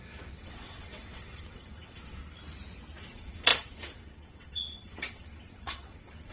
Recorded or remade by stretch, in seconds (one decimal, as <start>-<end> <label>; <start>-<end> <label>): 0.0-2.2 remade; 2.2-3.0 recorded; 3.0-6.3 remade